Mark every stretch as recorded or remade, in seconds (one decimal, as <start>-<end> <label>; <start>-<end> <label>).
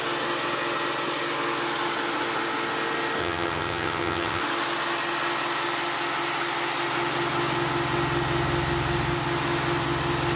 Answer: 0.0-3.2 recorded; 3.2-4.4 remade; 4.4-10.4 recorded